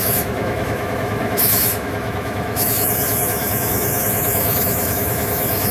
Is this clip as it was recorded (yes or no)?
no